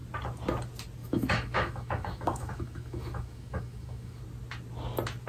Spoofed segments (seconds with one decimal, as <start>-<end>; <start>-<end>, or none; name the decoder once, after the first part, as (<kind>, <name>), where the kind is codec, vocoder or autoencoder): 1.0-4.2 (autoencoder, DAC-VAE)